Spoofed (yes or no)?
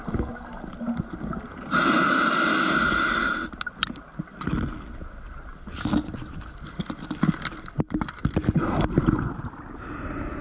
no